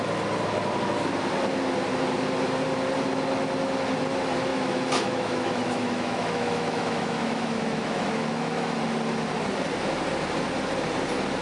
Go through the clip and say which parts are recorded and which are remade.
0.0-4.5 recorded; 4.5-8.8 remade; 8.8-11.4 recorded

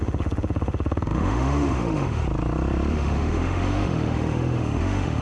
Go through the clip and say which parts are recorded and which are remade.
0.0-2.2 remade; 2.2-2.9 recorded; 2.9-5.2 remade

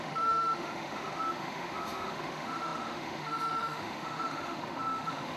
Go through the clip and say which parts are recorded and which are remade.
0.0-5.4 remade